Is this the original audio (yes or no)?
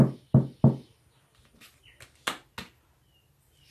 yes